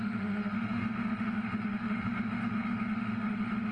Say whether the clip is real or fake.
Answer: fake